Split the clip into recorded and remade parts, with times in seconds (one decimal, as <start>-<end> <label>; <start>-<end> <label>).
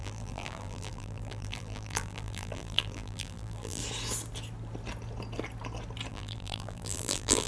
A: 0.0-3.8 remade; 3.8-6.1 recorded; 6.1-7.5 remade